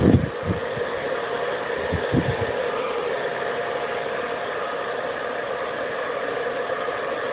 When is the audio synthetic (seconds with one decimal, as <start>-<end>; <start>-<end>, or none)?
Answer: none